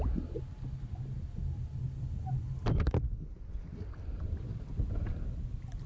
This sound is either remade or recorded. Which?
recorded